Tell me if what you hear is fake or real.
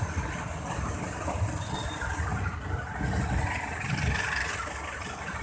real